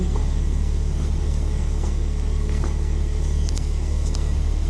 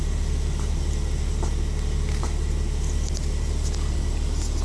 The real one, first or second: second